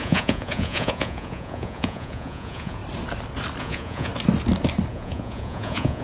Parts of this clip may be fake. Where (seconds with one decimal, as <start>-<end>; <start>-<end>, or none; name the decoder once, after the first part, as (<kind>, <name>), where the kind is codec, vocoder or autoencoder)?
0.0-2.8 (vocoder, Vocos); 3.6-4.1; 4.9-6.0